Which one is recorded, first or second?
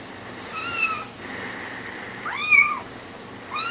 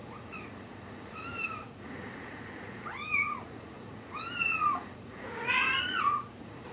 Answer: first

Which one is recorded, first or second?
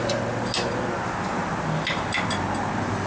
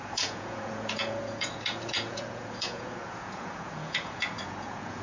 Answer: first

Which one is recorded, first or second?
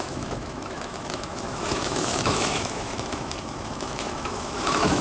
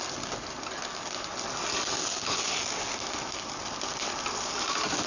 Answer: second